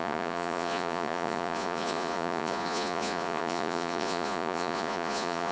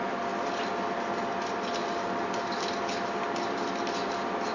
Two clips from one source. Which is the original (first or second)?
second